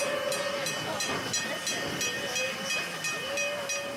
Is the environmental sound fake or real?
real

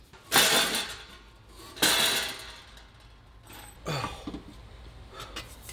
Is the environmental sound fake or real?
real